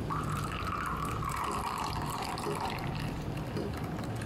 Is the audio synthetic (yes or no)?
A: no